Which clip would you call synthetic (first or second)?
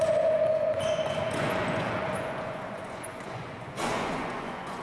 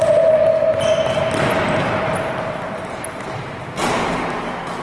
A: first